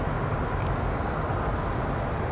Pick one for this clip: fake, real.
real